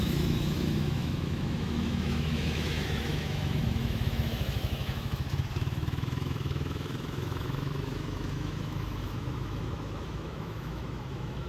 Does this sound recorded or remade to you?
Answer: remade